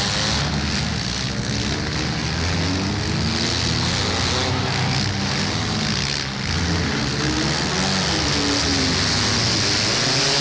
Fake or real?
real